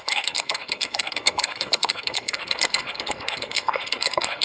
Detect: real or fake fake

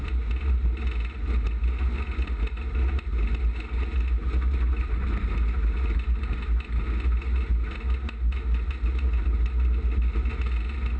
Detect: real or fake real